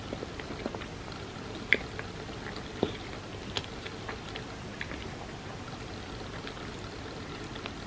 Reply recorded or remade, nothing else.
recorded